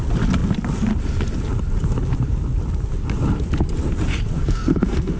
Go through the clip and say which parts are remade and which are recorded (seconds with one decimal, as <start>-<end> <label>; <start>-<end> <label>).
0.0-4.4 recorded; 4.4-5.2 remade